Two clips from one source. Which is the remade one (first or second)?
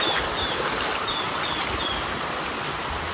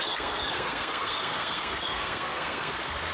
second